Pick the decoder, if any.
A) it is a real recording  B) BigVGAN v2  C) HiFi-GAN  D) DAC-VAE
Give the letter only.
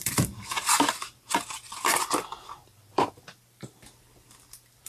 B